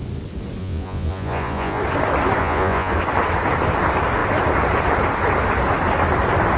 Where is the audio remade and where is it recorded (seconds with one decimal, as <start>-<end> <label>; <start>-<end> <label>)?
0.0-0.6 recorded; 0.6-1.8 remade; 1.8-2.4 recorded; 2.4-2.9 remade; 2.9-6.6 recorded